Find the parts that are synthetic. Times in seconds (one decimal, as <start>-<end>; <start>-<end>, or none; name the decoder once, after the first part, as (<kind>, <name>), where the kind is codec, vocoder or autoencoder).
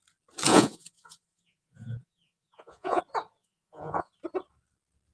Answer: 0.5-3.0 (vocoder, Vocos); 3.4-4.1